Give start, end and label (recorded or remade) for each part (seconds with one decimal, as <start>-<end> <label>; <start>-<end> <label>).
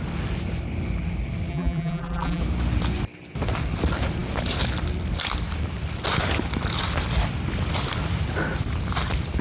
0.0-1.5 recorded; 1.5-2.4 remade; 2.4-9.4 recorded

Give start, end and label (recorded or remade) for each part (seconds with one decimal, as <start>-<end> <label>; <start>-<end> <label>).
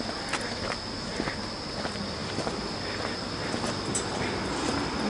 0.0-5.1 recorded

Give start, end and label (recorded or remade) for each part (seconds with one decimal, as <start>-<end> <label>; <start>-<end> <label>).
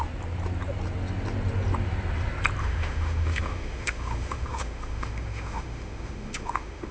0.0-2.6 recorded; 2.6-6.9 remade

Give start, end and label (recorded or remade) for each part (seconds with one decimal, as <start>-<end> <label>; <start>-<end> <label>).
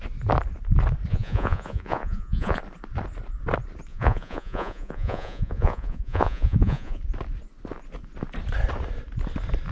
0.0-1.1 recorded; 1.1-2.6 remade; 2.6-3.9 recorded; 3.9-7.0 remade; 7.0-9.7 recorded